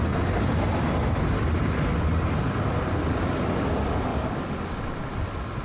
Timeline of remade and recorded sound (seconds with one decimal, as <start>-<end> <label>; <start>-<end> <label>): 0.0-5.6 recorded

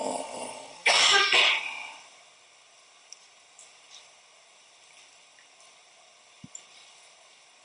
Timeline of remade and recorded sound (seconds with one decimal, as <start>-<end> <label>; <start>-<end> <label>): 0.0-1.4 remade; 1.4-7.6 recorded

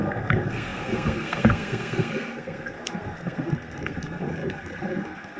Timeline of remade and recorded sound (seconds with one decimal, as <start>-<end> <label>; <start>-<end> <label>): 0.0-5.4 remade

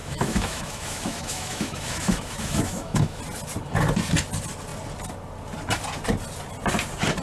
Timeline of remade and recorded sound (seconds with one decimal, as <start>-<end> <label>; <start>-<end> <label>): 0.0-3.2 remade; 3.2-7.2 recorded

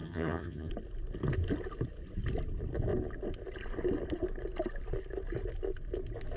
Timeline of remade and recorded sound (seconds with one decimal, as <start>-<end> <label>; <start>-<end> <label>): 0.0-0.7 remade; 0.7-6.4 recorded

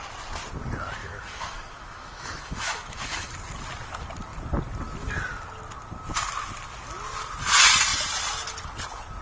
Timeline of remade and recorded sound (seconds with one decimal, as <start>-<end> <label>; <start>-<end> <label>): 0.0-1.0 recorded; 1.0-3.3 remade; 3.3-9.2 recorded

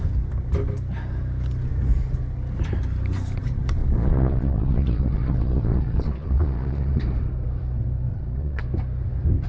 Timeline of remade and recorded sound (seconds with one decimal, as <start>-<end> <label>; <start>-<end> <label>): 0.0-3.8 recorded; 3.8-7.0 remade; 7.0-8.1 recorded; 8.1-8.6 remade; 8.6-9.5 recorded